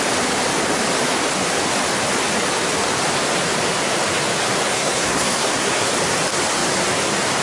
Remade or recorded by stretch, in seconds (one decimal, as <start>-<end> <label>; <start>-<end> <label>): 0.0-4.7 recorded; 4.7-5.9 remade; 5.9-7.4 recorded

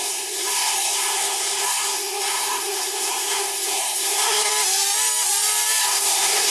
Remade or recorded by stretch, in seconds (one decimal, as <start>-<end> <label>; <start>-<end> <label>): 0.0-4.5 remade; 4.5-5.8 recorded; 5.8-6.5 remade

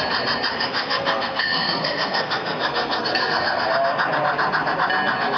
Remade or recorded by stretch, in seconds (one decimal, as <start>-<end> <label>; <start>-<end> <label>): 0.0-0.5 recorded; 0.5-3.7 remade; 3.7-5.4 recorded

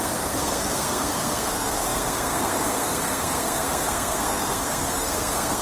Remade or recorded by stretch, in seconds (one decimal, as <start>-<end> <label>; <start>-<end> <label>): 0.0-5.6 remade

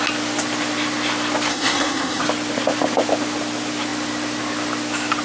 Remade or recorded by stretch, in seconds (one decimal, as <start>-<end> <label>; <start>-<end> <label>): 0.0-1.5 recorded; 1.5-2.2 remade; 2.2-5.2 recorded

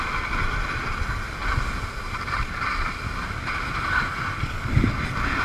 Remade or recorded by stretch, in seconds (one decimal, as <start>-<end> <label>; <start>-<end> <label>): 0.0-5.4 recorded